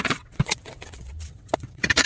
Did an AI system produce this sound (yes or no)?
yes